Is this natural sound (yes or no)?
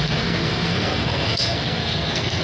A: no